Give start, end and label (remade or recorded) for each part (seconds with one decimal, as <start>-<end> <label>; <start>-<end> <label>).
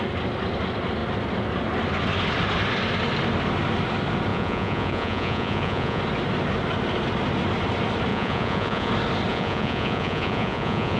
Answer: 0.0-4.3 recorded; 4.3-6.0 remade; 6.0-8.1 recorded; 8.1-8.9 remade; 8.9-9.3 recorded; 9.3-11.0 remade